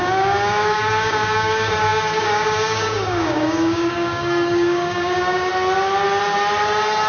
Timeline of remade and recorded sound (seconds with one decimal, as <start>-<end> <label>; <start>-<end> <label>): 0.0-5.5 remade; 5.5-7.1 recorded